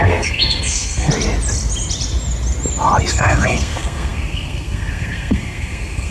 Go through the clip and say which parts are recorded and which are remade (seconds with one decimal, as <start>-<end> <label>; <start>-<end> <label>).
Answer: 0.0-1.1 remade; 1.1-3.1 recorded; 3.1-6.1 remade

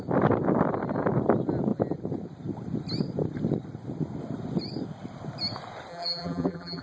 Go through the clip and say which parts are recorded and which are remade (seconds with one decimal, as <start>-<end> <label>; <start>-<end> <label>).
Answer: 0.0-5.9 recorded; 5.9-6.8 remade

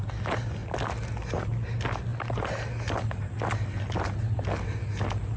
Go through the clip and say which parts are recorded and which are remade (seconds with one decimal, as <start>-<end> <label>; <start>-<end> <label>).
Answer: 0.0-5.4 recorded